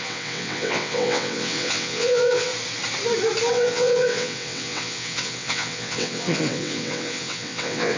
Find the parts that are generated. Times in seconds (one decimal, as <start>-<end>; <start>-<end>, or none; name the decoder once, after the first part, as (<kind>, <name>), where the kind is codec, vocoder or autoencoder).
0.0-2.5 (vocoder, WaveNeXt); 3.5-8.0